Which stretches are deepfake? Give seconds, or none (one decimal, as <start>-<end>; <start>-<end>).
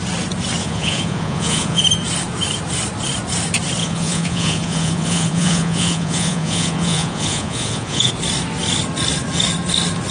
0.6-1.8; 3.8-8.1